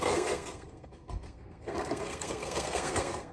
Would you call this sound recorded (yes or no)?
no